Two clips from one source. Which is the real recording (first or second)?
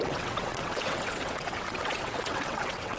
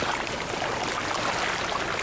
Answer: second